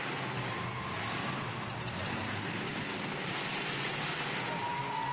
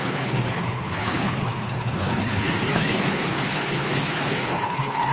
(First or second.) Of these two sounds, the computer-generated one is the second